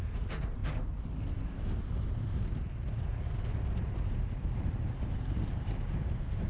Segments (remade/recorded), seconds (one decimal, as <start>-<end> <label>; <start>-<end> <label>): 0.0-0.6 remade; 0.6-3.8 recorded; 3.8-6.5 remade